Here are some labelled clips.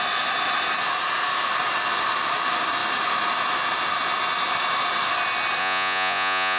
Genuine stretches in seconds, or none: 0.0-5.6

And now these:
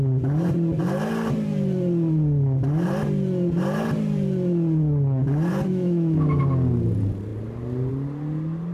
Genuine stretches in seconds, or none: 0.0-5.7; 6.4-8.7